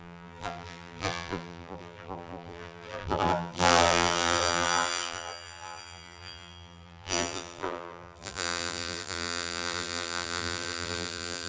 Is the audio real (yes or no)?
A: no